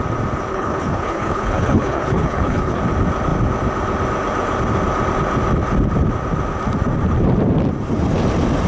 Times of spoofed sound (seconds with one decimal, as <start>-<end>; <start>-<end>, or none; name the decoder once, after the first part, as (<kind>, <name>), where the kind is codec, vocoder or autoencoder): 0.5-2.8 (codec, HILCodec)